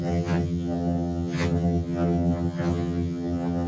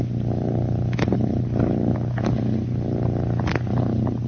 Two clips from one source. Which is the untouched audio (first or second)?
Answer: second